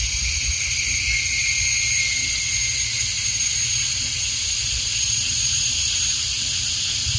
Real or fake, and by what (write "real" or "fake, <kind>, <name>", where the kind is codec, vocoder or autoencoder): real